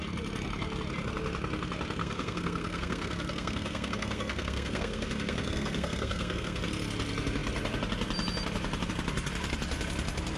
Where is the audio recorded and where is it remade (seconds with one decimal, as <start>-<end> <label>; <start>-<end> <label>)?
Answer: 0.0-2.0 recorded; 2.0-6.6 remade; 6.6-10.4 recorded